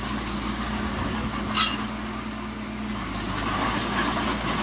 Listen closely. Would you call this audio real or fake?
real